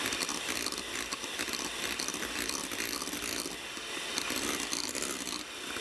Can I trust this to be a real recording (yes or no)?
no